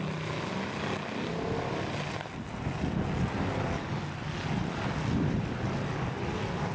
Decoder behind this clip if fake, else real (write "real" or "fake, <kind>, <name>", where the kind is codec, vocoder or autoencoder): real